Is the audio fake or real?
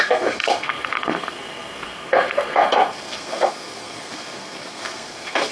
fake